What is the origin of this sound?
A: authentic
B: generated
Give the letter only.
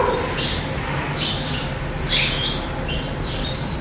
A